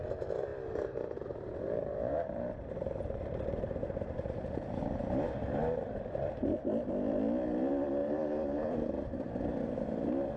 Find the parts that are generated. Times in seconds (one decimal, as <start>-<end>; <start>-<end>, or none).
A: 0.5-5.1; 8.0-9.3